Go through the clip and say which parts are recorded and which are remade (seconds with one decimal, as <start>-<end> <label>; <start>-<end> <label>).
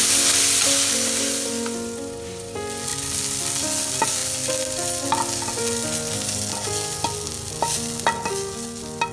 0.0-9.1 recorded